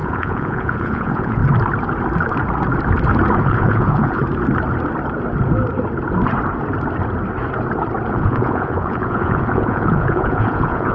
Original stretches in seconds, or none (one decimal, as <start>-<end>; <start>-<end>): 1.4-3.4; 4.2-8.1